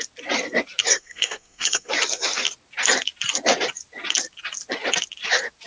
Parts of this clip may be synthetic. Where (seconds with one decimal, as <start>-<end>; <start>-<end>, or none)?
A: 0.9-1.9